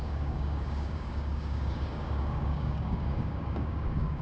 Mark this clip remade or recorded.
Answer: remade